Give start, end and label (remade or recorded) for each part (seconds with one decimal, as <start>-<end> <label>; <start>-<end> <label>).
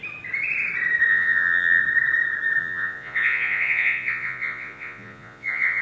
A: 0.0-1.1 recorded; 1.1-1.8 remade; 1.8-2.6 recorded; 2.6-5.8 remade